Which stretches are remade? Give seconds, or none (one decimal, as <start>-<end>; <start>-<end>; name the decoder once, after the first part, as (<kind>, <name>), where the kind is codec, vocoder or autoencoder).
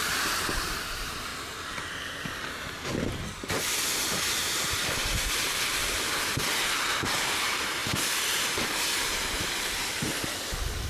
0.0-1.3 (vocoder, BigVGAN v2); 4.4-5.8; 6.9-10.9